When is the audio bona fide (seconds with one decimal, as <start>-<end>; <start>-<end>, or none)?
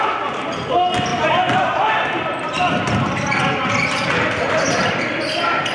0.0-5.7